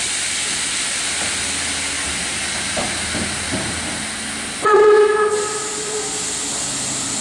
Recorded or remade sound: recorded